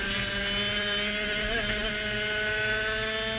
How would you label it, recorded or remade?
recorded